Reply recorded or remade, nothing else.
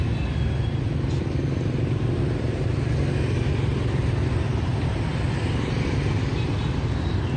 recorded